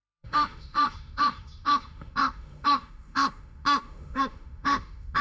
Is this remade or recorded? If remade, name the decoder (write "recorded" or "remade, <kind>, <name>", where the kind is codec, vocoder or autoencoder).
remade, autoencoder, DAC-VAE